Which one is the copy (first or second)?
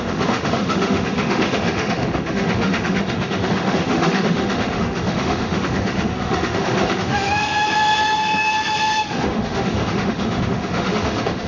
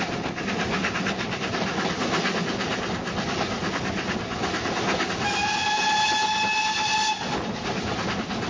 first